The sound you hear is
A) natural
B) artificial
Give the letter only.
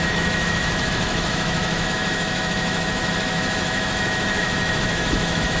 B